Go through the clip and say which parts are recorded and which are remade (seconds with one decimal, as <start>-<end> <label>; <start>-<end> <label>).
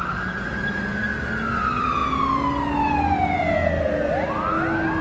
0.0-5.0 recorded